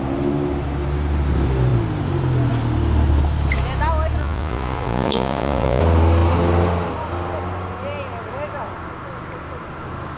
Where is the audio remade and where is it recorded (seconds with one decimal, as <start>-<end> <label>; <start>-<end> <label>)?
0.0-4.2 recorded; 4.2-5.8 remade; 5.8-10.2 recorded